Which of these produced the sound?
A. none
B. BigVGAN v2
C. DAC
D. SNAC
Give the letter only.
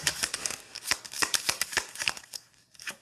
C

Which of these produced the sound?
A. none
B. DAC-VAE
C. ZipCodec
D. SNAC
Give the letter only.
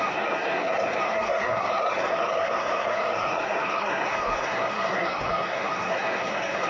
D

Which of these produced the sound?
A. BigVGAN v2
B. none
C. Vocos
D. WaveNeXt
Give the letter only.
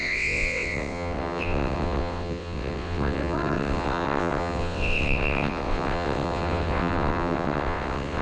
D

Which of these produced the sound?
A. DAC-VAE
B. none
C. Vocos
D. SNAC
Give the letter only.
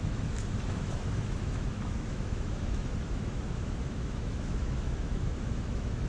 A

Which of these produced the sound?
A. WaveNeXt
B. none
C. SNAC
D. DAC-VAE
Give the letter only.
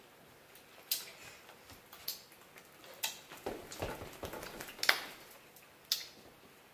B